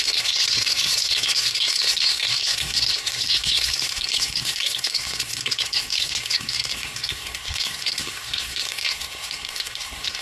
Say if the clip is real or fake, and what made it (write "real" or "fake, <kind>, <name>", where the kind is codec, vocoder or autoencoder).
fake, codec, SNAC